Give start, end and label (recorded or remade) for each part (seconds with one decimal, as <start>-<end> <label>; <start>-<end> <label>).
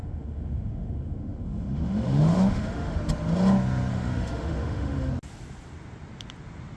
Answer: 0.0-3.0 remade; 3.0-3.9 recorded; 3.9-5.1 remade; 5.1-6.8 recorded